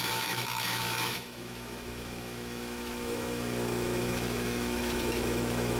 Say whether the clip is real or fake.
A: fake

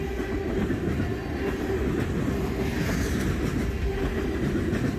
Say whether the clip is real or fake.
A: real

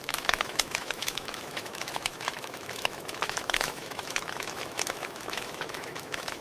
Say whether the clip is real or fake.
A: fake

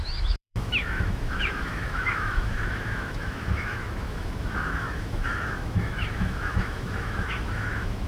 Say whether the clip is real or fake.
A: fake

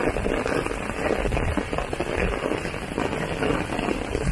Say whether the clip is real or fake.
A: real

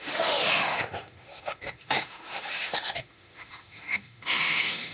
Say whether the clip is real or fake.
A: fake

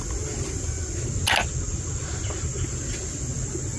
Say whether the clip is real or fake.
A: real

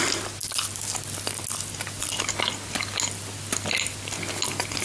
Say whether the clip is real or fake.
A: real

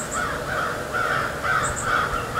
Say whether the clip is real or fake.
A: real